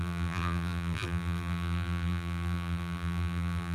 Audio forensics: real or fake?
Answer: fake